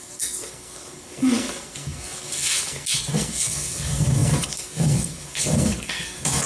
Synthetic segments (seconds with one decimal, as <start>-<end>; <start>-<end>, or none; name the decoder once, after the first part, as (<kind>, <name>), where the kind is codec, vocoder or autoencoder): 0.0-6.5 (codec, SNAC)